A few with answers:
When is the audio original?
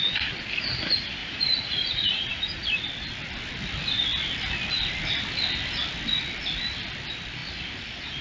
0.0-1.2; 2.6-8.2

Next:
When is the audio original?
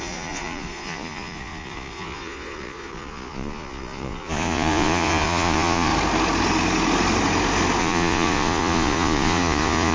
5.9-7.8